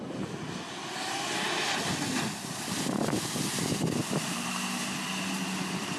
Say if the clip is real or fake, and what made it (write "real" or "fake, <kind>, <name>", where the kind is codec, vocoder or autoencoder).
real